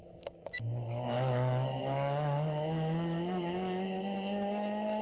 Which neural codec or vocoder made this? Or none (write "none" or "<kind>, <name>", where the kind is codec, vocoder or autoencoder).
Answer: autoencoder, DAC-VAE